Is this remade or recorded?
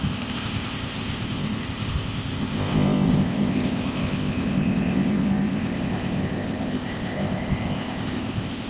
remade